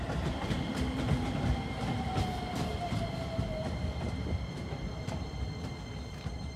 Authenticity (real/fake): fake